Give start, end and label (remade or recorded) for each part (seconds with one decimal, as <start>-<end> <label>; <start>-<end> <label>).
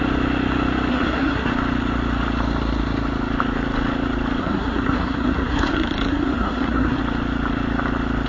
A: 0.0-0.9 recorded; 0.9-1.5 remade; 1.5-4.4 recorded; 4.4-7.0 remade; 7.0-8.3 recorded